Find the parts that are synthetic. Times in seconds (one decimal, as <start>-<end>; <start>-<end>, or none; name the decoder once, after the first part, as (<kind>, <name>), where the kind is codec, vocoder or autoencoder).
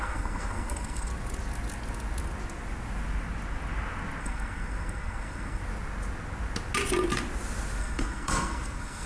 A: 0.0-1.1 (codec, SNAC); 4.2-5.6; 7.8-9.1